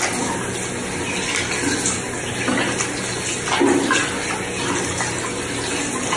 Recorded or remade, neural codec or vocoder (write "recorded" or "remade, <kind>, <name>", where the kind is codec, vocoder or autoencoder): recorded